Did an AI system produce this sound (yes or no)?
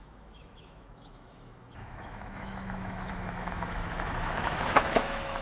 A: yes